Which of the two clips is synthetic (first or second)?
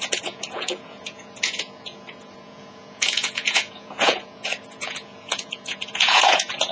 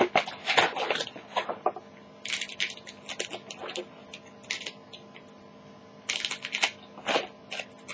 first